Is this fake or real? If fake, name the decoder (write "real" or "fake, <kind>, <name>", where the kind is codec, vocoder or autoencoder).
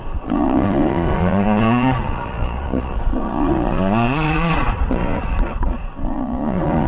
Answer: fake, vocoder, Vocos